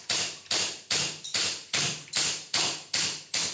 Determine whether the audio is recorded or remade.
remade